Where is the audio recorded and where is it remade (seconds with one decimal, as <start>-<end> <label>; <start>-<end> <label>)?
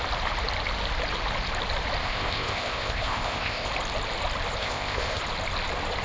0.0-2.0 recorded; 2.0-3.7 remade; 3.7-4.6 recorded; 4.6-5.2 remade; 5.2-6.0 recorded